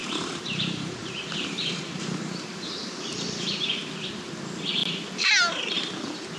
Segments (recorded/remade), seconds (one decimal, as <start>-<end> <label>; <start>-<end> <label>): 0.0-2.9 remade; 2.9-6.4 recorded